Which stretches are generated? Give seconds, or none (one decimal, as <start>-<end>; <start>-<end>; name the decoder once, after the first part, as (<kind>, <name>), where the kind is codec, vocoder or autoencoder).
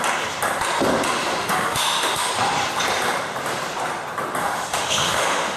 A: 1.4-2.3 (autoencoder, DAC-VAE); 4.4-5.6